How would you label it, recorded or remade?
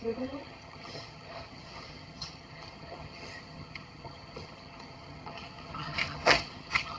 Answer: remade